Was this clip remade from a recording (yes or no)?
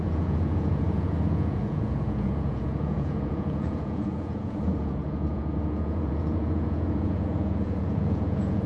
yes